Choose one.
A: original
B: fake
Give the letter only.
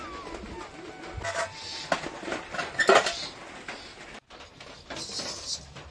A